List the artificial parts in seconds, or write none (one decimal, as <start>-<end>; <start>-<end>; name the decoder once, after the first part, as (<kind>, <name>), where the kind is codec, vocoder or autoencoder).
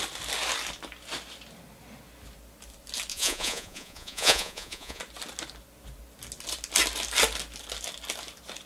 3.1-5.0 (vocoder, Vocos)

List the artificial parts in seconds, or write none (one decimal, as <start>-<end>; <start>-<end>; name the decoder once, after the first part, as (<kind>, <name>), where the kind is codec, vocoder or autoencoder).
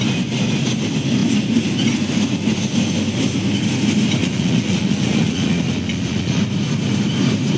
4.2-6.4 (vocoder, Vocos)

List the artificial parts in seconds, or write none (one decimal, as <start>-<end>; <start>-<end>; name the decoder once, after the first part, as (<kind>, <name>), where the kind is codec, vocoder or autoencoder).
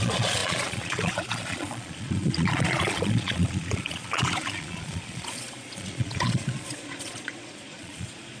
0.0-8.4 (vocoder, Vocos)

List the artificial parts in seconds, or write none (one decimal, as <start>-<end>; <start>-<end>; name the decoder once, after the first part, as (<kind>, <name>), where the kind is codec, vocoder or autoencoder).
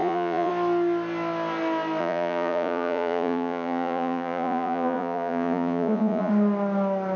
0.0-0.5 (vocoder, Vocos); 2.0-6.3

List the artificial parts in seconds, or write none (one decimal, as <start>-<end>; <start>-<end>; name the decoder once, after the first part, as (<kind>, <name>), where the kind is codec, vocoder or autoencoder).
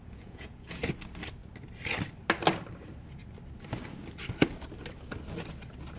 0.0-0.8 (vocoder, Vocos)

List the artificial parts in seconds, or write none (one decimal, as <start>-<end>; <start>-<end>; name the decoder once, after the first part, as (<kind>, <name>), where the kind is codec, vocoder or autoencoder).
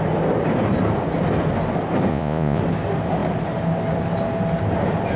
2.1-2.6 (vocoder, Vocos)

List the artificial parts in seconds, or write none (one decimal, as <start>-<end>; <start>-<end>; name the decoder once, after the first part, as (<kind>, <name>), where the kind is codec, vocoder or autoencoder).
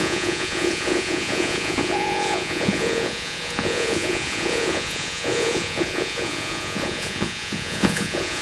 0.0-8.4 (vocoder, Vocos)